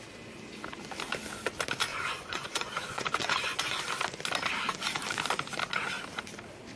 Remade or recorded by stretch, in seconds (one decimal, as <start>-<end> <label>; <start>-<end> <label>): 0.0-1.9 recorded; 1.9-3.8 remade; 3.8-6.8 recorded